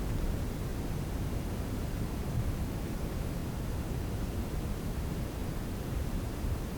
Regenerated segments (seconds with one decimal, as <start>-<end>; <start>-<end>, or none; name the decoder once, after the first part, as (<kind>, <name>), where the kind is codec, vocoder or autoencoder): 0.0-0.7 (vocoder, BigVGAN v2); 1.5-3.4; 4.1-6.8